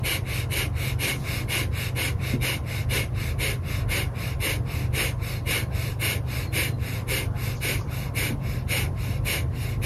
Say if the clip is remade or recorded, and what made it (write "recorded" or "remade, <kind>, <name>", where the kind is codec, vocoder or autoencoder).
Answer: remade, vocoder, BigVGAN v2